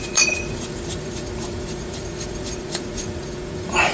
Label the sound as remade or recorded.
remade